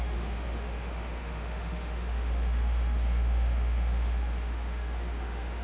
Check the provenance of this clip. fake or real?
fake